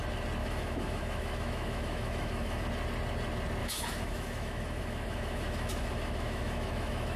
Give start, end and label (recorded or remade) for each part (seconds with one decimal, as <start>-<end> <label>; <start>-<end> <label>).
0.0-0.4 recorded; 0.4-2.6 remade; 2.6-3.6 recorded; 3.6-7.2 remade